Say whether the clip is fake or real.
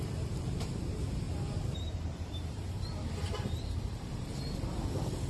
fake